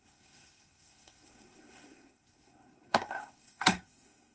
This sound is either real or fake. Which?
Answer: fake